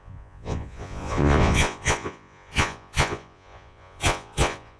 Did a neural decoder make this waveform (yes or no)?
yes